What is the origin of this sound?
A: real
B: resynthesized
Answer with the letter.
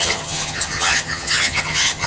B